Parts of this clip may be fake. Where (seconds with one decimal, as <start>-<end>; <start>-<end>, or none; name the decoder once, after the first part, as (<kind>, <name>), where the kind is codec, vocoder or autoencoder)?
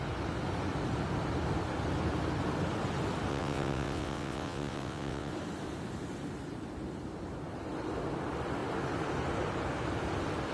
3.3-5.3 (vocoder, WaveNeXt)